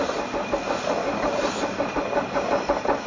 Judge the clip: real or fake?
real